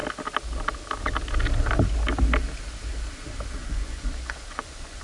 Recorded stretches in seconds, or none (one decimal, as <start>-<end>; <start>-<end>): 0.0-3.6